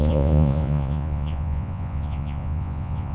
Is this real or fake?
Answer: fake